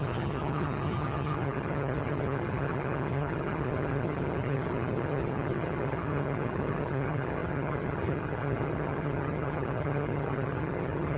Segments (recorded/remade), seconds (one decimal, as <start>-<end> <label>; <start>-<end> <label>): 0.0-11.2 remade